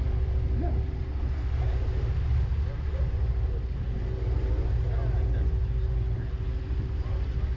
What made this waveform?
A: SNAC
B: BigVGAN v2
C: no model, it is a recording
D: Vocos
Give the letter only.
C